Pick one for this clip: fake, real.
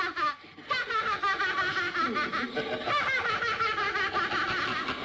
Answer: real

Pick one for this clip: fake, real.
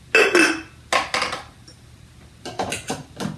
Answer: real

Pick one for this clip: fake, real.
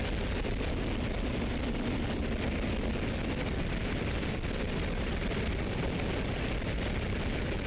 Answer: real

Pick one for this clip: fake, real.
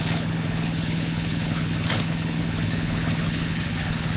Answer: fake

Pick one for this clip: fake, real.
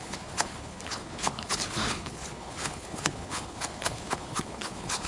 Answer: fake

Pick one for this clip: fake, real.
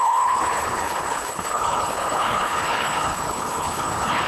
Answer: fake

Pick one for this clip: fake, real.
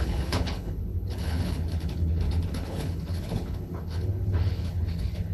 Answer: fake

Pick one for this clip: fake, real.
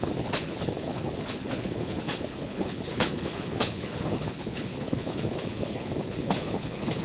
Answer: fake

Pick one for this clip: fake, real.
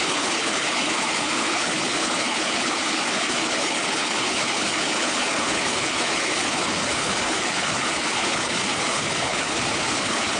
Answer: fake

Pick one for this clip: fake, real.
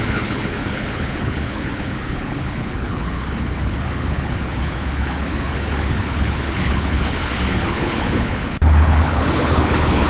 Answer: fake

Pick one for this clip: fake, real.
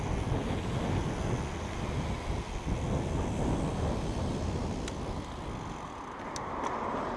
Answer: real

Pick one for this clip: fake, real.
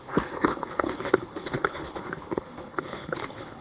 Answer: fake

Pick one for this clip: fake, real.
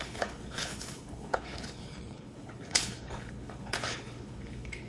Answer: fake